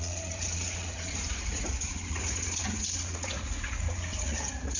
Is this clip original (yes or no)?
no